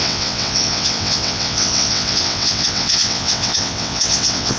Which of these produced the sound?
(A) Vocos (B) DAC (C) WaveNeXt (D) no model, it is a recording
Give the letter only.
C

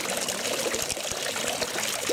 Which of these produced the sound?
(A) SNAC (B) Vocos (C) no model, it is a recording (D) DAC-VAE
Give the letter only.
C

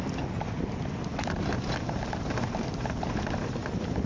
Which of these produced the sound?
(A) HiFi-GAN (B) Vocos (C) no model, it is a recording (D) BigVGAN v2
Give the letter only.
C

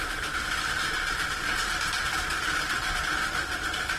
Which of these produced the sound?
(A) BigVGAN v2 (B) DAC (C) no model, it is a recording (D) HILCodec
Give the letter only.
A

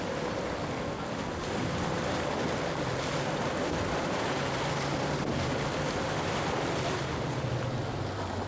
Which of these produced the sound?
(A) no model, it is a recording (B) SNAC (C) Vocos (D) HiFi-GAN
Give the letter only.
A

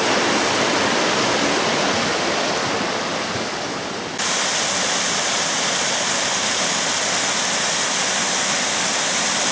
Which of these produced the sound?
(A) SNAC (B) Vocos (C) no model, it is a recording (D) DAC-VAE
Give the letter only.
C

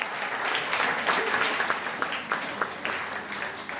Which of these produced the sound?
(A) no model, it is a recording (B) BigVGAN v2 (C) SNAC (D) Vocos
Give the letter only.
A